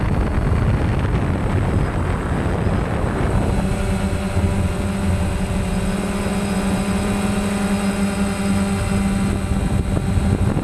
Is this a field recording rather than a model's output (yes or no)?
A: yes